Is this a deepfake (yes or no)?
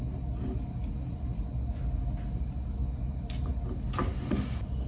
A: no